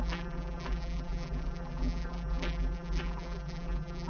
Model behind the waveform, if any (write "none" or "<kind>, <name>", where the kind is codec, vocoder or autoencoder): vocoder, BigVGAN v2